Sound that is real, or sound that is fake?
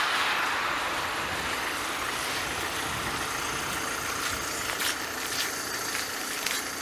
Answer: real